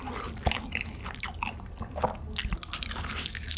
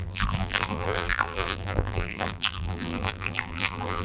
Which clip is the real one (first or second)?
first